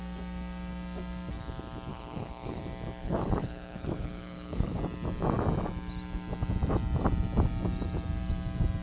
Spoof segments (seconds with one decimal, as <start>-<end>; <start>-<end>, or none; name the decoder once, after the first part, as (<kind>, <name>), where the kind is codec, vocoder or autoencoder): 1.9-2.6 (codec, HILCodec); 3.0-4.8